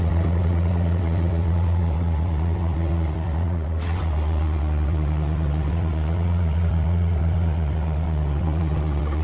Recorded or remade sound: remade